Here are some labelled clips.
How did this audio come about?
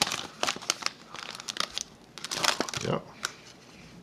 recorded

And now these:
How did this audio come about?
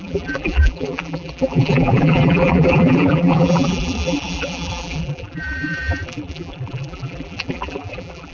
remade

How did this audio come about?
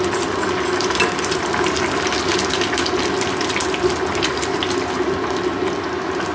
recorded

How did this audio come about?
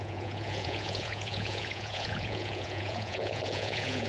remade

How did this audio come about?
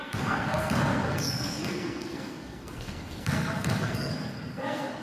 remade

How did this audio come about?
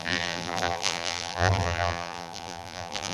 remade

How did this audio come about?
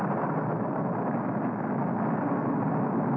recorded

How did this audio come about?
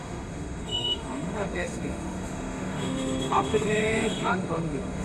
remade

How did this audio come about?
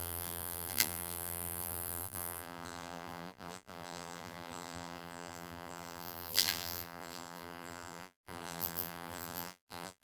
remade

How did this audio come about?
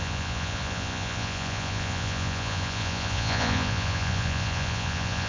remade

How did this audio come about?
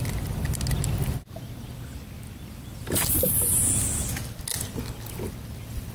recorded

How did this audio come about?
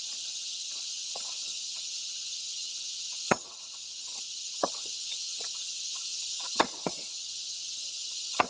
remade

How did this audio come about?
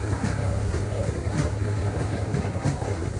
remade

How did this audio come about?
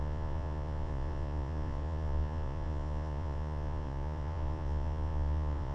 remade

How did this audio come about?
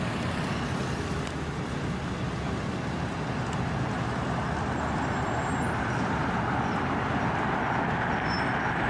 recorded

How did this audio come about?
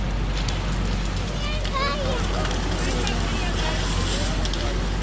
recorded